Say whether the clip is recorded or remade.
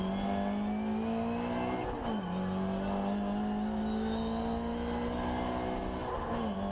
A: recorded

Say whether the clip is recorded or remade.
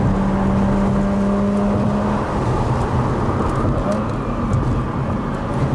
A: recorded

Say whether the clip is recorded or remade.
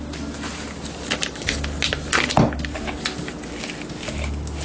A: recorded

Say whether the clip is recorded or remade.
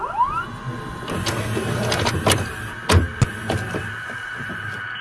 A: recorded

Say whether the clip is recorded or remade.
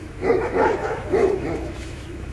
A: remade